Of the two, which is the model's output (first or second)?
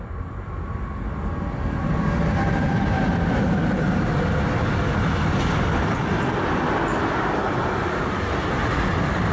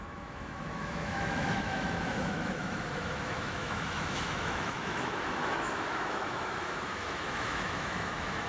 second